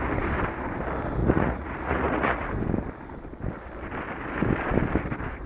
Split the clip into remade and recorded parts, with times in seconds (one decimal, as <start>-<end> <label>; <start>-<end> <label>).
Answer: 0.0-1.2 recorded; 1.2-2.5 remade; 2.5-5.5 recorded